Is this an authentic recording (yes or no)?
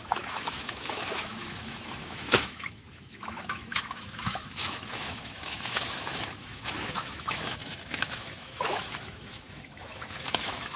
no